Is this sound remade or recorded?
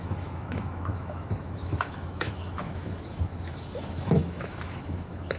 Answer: remade